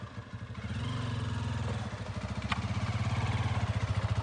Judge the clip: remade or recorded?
recorded